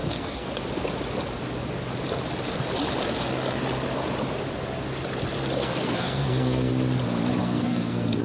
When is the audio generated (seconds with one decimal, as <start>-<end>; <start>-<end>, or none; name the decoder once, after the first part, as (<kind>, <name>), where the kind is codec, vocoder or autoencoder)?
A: 0.0-0.5 (codec, SNAC); 5.6-6.7; 7.4-8.2